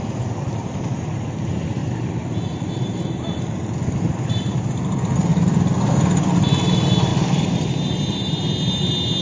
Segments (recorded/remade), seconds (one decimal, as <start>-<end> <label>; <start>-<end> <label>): 0.0-1.8 recorded; 1.8-4.4 remade; 4.4-9.2 recorded